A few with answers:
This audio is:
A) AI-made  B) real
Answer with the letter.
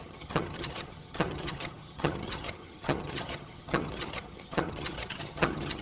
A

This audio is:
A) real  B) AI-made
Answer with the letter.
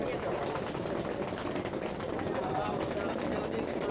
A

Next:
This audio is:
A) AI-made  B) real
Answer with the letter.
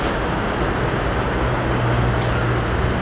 B